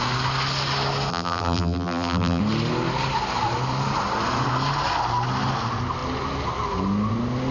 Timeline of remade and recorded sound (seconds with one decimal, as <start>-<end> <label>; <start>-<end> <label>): 0.0-1.1 recorded; 1.1-2.4 remade; 2.4-7.5 recorded